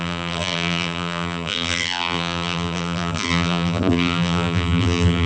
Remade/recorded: remade